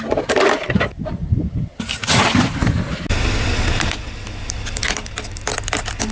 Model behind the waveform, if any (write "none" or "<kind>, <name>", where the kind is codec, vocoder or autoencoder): none